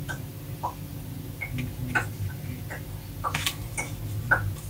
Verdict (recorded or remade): recorded